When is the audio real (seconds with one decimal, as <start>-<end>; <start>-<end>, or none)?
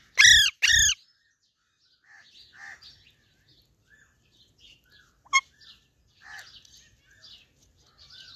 0.0-8.4